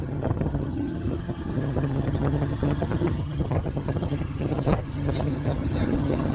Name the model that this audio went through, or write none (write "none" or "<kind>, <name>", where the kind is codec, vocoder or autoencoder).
vocoder, HiFi-GAN